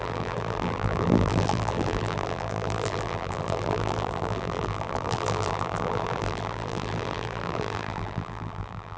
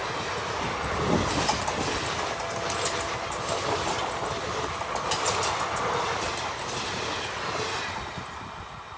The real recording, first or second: second